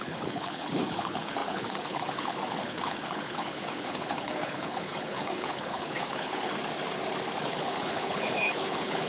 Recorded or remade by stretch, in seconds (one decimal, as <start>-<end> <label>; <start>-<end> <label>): 0.0-6.5 remade; 6.5-7.4 recorded; 7.4-9.1 remade